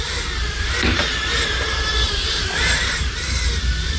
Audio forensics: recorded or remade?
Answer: remade